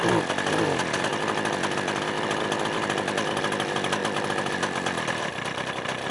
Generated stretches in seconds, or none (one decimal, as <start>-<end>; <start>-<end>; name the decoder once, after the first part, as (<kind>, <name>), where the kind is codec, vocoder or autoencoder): none